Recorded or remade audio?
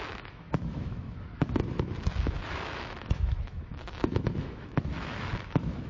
remade